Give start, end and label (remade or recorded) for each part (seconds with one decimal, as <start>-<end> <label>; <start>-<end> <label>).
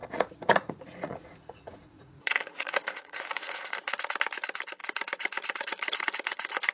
0.0-3.7 remade; 3.7-6.7 recorded